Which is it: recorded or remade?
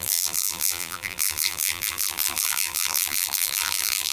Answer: remade